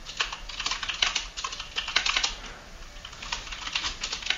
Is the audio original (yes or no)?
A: yes